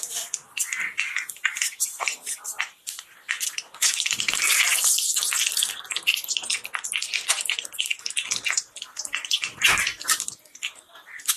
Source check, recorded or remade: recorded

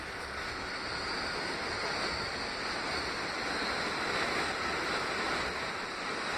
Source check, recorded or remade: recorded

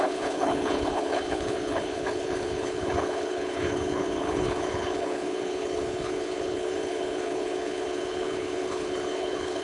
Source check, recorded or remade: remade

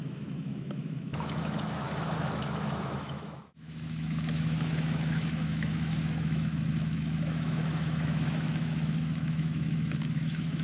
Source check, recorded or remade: remade